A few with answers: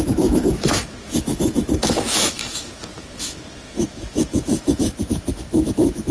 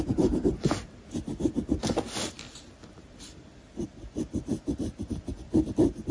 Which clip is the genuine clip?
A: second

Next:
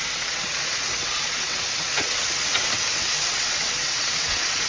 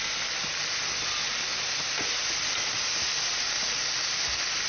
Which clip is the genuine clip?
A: second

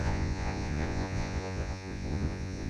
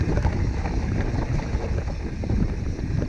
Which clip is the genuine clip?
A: second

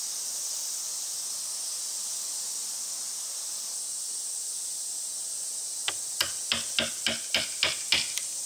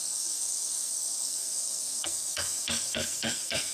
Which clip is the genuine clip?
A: first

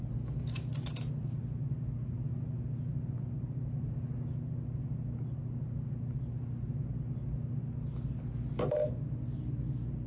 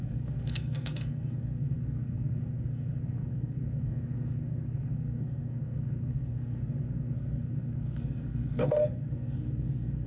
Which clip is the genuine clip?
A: first